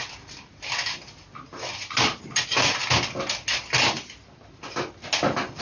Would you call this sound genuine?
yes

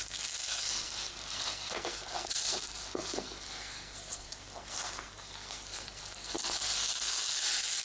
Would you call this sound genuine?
no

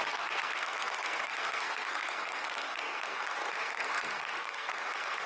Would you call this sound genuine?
no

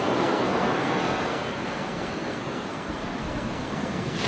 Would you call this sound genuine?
no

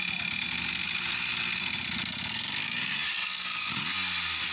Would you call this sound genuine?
yes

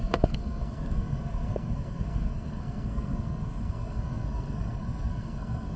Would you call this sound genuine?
no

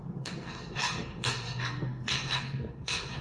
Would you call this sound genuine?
no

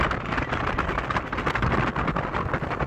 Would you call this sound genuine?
yes